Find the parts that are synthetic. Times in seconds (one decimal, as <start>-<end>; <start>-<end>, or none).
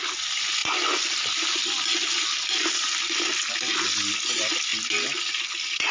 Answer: none